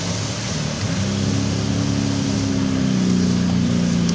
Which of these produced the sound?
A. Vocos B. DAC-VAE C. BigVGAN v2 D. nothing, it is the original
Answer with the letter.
D